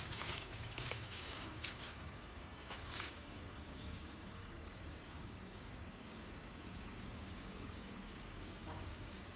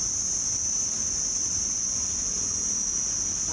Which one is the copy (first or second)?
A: first